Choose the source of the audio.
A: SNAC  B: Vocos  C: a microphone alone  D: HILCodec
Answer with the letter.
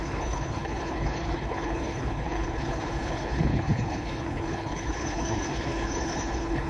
D